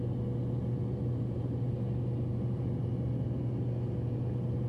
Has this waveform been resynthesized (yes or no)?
no